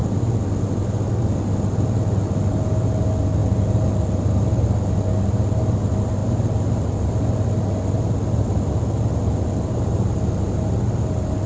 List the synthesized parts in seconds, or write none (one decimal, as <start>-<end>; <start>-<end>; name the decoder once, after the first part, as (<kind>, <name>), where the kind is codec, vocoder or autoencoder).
none